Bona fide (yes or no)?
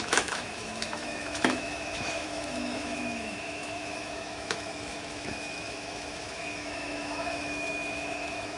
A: no